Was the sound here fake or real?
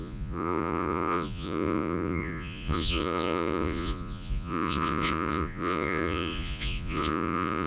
fake